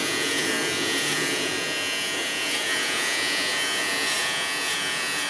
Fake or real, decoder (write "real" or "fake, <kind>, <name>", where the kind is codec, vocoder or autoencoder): fake, vocoder, Vocos